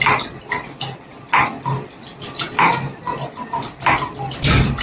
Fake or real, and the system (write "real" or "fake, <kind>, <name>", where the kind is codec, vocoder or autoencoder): real